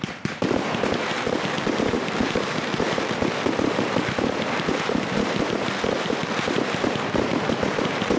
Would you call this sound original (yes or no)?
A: no